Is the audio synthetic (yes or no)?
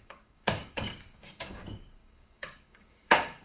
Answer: yes